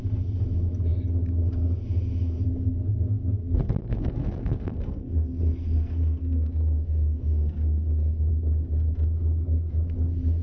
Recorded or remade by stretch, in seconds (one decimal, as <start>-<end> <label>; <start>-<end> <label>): 0.0-3.9 recorded; 3.9-8.3 remade; 8.3-10.4 recorded